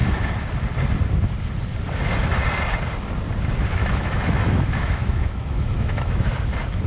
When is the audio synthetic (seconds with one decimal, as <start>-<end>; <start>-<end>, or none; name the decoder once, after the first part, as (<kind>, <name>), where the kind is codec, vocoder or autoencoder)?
3.8-6.3 (autoencoder, DAC-VAE)